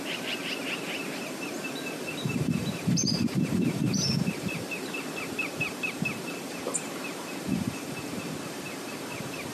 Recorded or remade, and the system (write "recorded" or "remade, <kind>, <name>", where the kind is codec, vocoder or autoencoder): remade, vocoder, BigVGAN v2